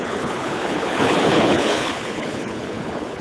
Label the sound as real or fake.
fake